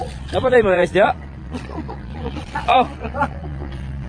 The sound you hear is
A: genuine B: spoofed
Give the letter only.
B